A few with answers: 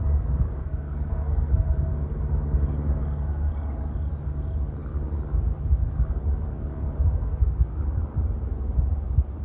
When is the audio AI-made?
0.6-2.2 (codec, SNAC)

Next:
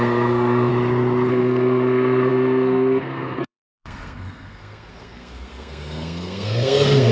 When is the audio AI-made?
0.0-0.7 (codec, SNAC); 1.3-7.1

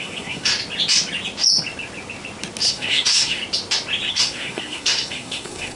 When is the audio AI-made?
0.0-0.5 (codec, SNAC); 2.7-3.4; 4.1-5.8

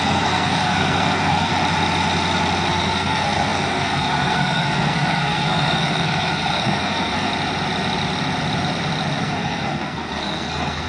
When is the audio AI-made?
0.0-1.5 (codec, SNAC); 2.7-7.3; 9.2-10.9

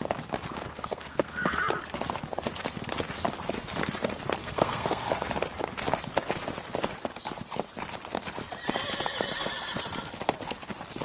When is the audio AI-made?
0.7-1.6 (codec, SNAC); 4.4-5.1

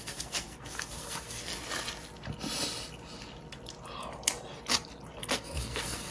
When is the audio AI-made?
0.0-1.5 (codec, SNAC); 5.2-6.1

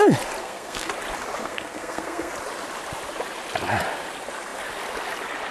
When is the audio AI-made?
0.4-0.9 (codec, SNAC); 1.4-2.3

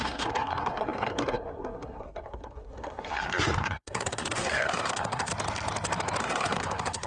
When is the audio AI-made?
0.0-5.3 (codec, SNAC); 6.2-7.1